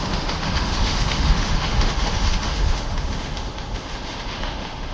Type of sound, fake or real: fake